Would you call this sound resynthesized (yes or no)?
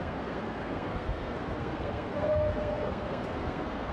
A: yes